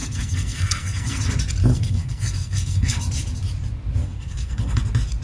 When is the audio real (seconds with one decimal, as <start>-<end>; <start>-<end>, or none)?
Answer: 1.2-1.7; 3.0-4.0; 4.8-5.2